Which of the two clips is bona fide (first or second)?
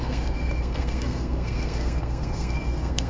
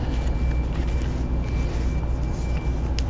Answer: second